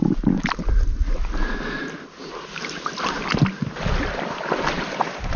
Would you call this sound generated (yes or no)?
no